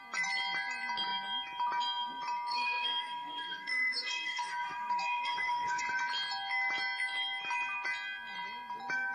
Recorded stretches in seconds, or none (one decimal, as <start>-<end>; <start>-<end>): 0.0-2.5; 5.8-9.1